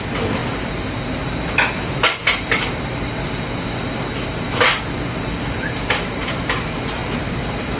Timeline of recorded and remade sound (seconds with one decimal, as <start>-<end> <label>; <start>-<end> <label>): 0.0-0.4 remade; 0.4-5.1 recorded; 5.1-7.8 remade